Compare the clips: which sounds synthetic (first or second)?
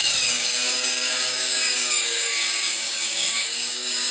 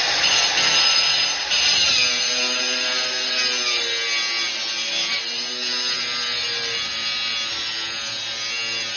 first